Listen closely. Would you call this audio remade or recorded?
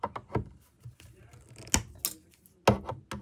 recorded